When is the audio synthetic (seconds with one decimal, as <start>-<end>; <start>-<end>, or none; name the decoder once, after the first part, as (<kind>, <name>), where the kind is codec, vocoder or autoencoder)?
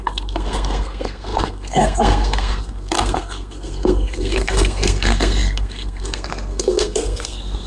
0.0-7.7 (codec, SNAC)